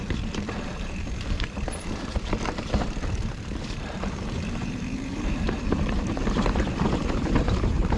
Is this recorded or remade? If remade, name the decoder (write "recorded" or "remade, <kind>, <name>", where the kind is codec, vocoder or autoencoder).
remade, vocoder, BigVGAN v2